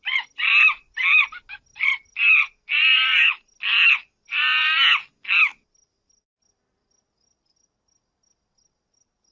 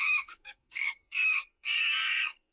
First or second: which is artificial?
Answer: second